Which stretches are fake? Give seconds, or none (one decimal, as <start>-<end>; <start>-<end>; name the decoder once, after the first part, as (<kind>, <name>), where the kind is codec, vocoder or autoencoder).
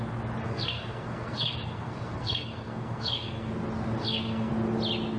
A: 0.4-3.5 (codec, SNAC); 4.0-4.5